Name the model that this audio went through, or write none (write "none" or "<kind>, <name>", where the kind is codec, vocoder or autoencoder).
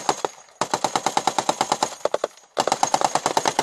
none